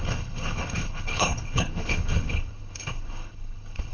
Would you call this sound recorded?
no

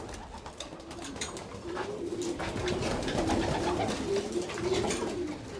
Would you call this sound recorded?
yes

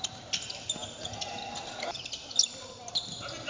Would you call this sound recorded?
yes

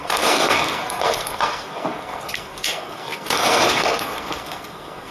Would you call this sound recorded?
no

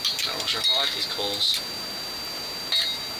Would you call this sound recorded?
yes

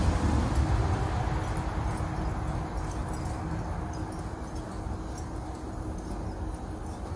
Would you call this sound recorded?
yes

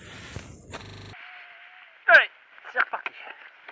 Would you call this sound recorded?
yes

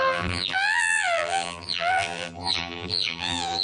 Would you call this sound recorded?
no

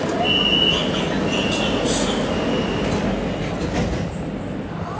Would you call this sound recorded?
yes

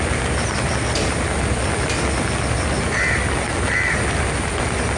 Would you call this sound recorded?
yes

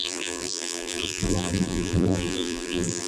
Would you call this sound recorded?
no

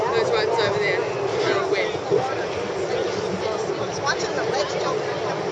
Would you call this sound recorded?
yes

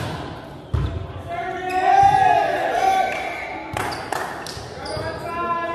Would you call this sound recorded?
yes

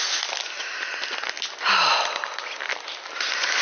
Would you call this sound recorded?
yes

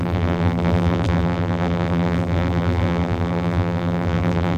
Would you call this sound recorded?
no